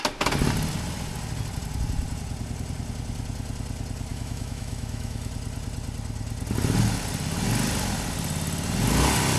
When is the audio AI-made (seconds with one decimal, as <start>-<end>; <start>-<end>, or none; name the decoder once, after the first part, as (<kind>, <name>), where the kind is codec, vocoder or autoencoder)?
4.1-5.3 (autoencoder, DAC-VAE)